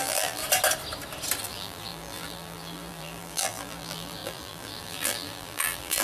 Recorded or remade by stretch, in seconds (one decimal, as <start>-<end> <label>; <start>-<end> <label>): 0.0-0.4 remade; 0.4-1.4 recorded; 1.4-6.0 remade